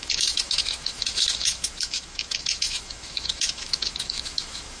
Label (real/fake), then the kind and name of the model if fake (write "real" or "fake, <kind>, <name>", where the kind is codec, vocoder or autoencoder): fake, autoencoder, DAC-VAE